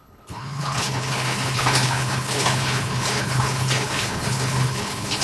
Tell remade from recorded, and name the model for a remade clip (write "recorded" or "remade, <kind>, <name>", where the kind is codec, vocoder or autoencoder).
remade, codec, HILCodec